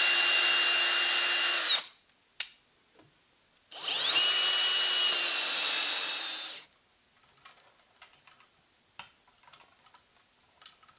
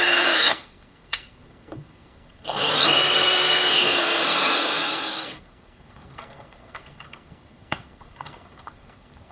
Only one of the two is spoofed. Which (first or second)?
second